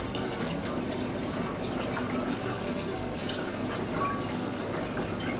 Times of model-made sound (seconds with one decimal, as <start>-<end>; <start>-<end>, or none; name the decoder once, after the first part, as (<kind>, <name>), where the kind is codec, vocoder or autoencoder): 0.0-0.7 (codec, SNAC); 2.3-3.6; 4.3-4.7